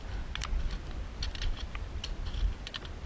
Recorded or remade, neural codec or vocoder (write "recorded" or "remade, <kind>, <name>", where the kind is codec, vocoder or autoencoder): recorded